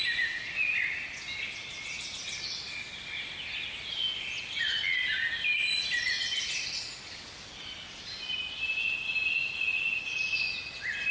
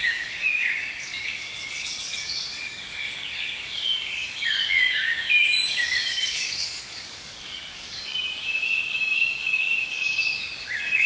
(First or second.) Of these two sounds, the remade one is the second